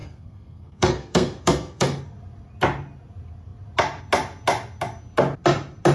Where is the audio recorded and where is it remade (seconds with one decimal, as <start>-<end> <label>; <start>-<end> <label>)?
0.0-2.0 remade; 2.0-5.9 recorded